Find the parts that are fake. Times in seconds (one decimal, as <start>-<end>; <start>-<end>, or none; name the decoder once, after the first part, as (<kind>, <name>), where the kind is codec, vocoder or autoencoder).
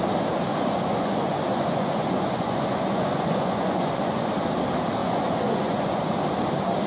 0.5-4.3 (vocoder, Vocos); 5.0-6.2